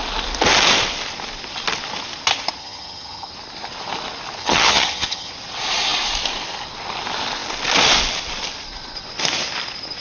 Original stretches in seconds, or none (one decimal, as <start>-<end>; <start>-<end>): 0.0-2.6; 3.3-4.4; 5.3-10.0